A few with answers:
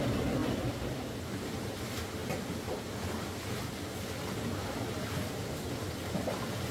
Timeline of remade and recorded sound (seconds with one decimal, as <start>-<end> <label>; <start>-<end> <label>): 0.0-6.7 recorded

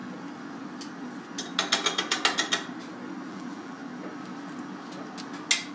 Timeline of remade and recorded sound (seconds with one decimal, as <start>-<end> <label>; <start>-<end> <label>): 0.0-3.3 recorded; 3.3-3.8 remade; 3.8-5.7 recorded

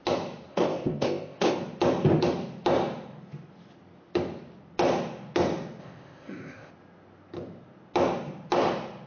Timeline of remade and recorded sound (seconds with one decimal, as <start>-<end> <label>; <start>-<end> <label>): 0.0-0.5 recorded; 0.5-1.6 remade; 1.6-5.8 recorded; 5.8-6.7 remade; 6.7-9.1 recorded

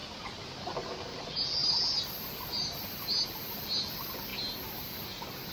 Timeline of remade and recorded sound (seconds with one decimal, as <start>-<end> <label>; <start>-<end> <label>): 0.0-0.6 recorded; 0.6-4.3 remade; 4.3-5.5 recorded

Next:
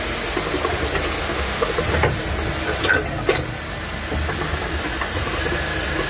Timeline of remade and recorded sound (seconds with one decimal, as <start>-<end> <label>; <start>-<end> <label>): 0.0-1.2 recorded; 1.2-1.7 remade; 1.7-6.1 recorded

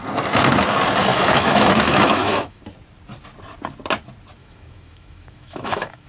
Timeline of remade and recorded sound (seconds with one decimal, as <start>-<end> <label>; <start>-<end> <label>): 0.0-1.1 recorded; 1.1-2.6 remade; 2.6-4.4 recorded; 4.4-6.1 remade

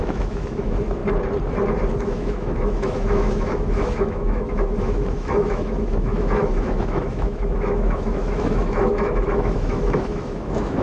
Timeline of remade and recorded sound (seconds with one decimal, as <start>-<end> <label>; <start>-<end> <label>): 0.0-1.0 remade; 1.0-2.0 recorded; 2.0-10.8 remade